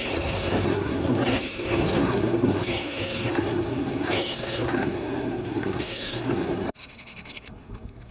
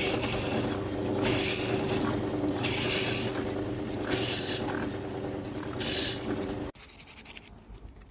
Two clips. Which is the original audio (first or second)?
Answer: second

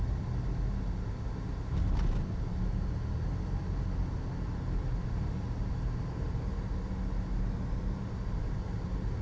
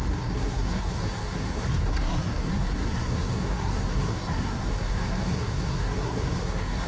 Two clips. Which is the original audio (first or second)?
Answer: first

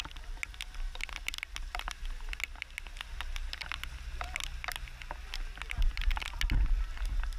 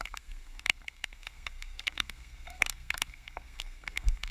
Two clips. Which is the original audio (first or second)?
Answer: first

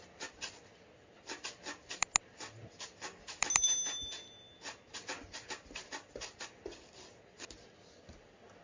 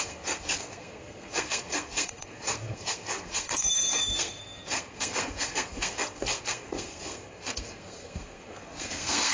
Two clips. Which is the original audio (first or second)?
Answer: first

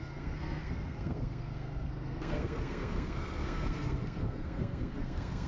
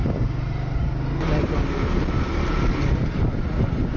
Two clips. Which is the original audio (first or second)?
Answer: second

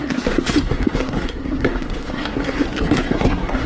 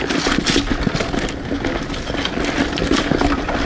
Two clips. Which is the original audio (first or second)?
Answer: second